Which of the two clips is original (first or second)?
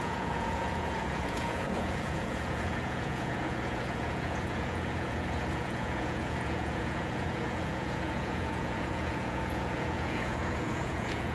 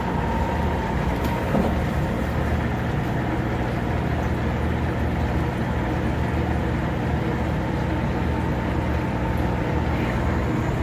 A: second